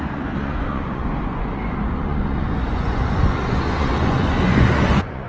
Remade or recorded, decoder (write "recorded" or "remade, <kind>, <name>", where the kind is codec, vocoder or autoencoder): remade, vocoder, Vocos